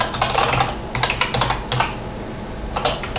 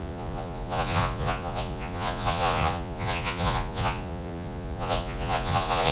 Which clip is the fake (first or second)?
second